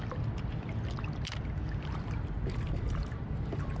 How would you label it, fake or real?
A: real